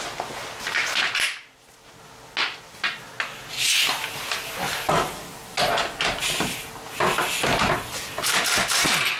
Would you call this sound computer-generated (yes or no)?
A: no